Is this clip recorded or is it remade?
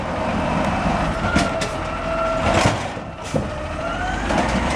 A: remade